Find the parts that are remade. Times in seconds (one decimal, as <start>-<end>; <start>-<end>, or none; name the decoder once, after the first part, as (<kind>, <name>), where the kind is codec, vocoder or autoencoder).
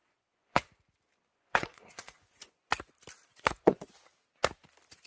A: 0.0-0.7 (vocoder, Vocos); 1.3-2.7; 3.3-3.9